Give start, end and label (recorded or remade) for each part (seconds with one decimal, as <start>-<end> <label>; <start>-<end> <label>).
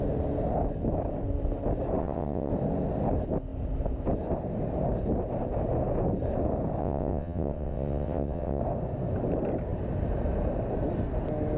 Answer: 0.0-2.0 recorded; 2.0-2.5 remade; 2.5-6.8 recorded; 6.8-8.6 remade; 8.6-11.6 recorded